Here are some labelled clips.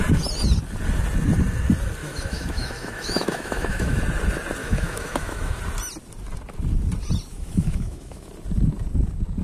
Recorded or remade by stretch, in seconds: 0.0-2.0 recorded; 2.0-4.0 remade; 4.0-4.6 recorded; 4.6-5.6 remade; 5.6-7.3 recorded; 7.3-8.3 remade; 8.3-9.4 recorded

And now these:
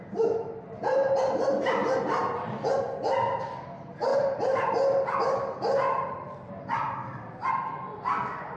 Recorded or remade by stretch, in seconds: 0.0-8.6 recorded

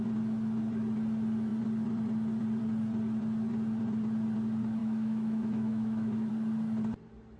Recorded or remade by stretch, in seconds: 0.0-4.8 recorded; 4.8-6.3 remade; 6.3-7.4 recorded

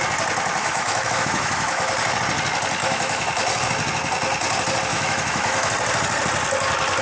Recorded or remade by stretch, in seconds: 0.0-0.6 recorded; 0.6-1.9 remade; 1.9-2.8 recorded; 2.8-3.3 remade; 3.3-4.9 recorded; 4.9-5.7 remade; 5.7-7.0 recorded

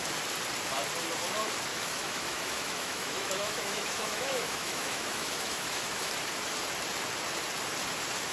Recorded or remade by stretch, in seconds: 0.0-1.7 recorded; 1.7-6.1 remade; 6.1-8.3 recorded

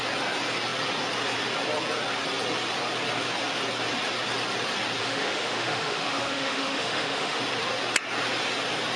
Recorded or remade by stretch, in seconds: 0.0-5.0 recorded; 5.0-7.4 remade; 7.4-9.0 recorded

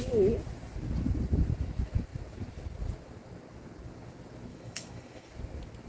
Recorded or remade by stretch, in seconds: 0.0-4.5 recorded; 4.5-5.3 remade; 5.3-5.9 recorded